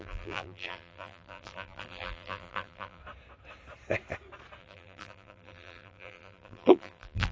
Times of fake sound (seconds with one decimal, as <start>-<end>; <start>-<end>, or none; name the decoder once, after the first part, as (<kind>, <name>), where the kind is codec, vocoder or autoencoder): 0.0-3.0 (vocoder, BigVGAN v2); 4.6-7.3